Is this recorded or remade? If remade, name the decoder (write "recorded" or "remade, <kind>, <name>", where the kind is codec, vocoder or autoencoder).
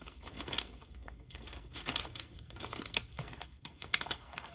remade, codec, SNAC